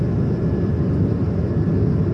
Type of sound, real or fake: real